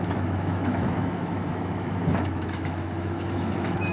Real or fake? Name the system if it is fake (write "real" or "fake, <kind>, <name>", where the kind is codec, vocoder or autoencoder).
fake, autoencoder, DAC-VAE